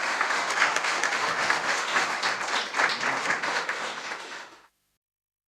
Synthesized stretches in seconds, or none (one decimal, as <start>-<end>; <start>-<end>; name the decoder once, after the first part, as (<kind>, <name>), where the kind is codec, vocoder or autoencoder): 0.0-2.2 (autoencoder, DAC-VAE); 3.2-5.5